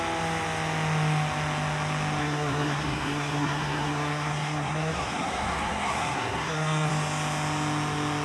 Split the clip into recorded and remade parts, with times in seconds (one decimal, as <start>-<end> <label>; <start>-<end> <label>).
0.0-2.2 recorded; 2.2-6.9 remade; 6.9-8.2 recorded